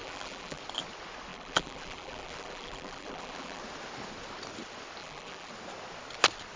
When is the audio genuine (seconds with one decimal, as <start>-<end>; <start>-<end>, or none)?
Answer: 0.6-1.3; 3.6-5.0; 5.5-6.6